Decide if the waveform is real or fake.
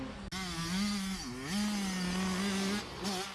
real